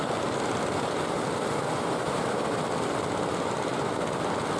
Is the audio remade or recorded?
recorded